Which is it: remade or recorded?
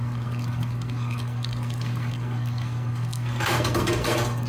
remade